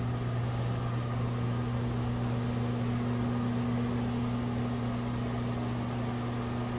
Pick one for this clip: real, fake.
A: real